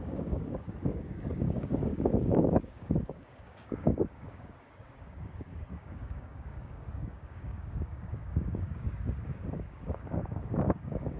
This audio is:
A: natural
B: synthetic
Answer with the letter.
B